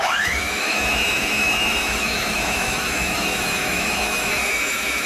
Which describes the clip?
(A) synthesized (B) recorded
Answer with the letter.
A